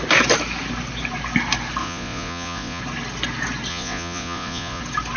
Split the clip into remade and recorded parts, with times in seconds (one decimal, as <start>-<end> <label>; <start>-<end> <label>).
0.0-1.8 recorded; 1.8-2.8 remade; 2.8-3.7 recorded; 3.7-4.8 remade; 4.8-5.2 recorded